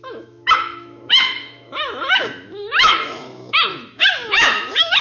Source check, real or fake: fake